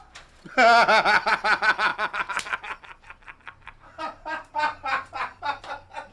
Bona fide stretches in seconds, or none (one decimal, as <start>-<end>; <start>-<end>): 0.0-1.9; 5.6-6.1